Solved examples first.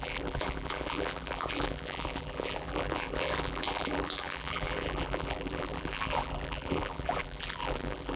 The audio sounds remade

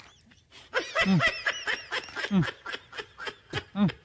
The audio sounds recorded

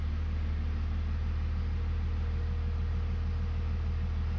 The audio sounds recorded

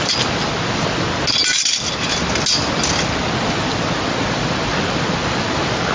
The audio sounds recorded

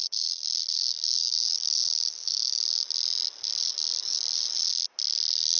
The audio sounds recorded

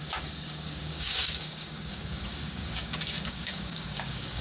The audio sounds remade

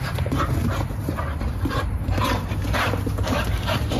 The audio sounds remade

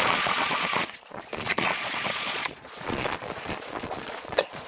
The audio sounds remade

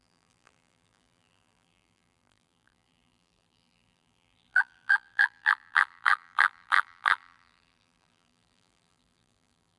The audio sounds remade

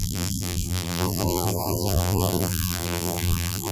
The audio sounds remade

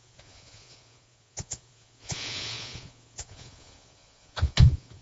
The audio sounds remade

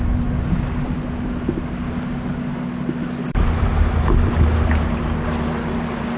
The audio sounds recorded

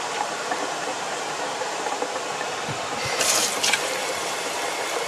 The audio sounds remade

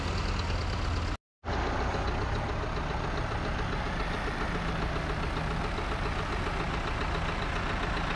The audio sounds recorded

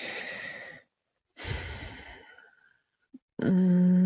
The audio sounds recorded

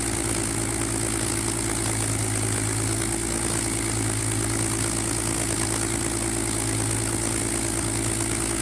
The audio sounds recorded